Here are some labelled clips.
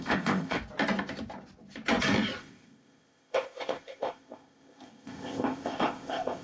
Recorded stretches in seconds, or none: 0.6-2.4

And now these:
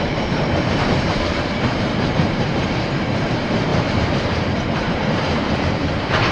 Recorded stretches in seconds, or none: none

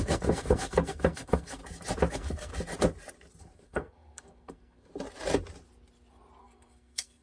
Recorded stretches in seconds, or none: 1.6-2.1; 2.5-3.4; 4.9-6.4

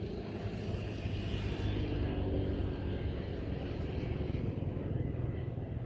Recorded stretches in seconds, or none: 0.0-5.9

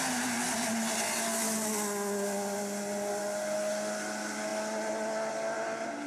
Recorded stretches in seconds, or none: 0.0-6.1